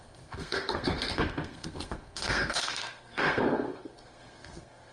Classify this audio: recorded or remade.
remade